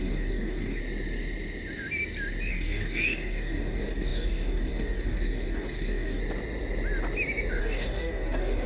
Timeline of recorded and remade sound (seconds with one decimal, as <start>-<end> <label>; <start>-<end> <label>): 0.0-0.8 remade; 0.8-2.5 recorded; 2.5-6.2 remade; 6.2-7.6 recorded; 7.6-8.7 remade